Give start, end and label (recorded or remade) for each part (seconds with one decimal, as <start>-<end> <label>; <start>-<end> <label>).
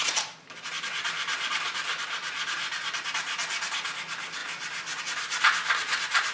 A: 0.0-6.3 recorded